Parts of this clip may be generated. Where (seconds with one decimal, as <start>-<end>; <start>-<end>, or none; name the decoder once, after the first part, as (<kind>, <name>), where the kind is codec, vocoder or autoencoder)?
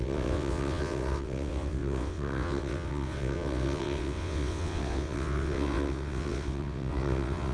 0.0-7.5 (vocoder, WaveNeXt)